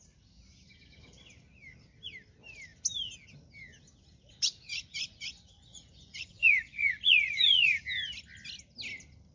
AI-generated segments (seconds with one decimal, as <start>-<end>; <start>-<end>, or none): 4.7-7.8